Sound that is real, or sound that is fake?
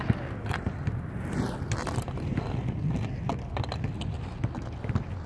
real